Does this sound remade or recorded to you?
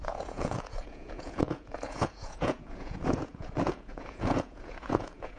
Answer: remade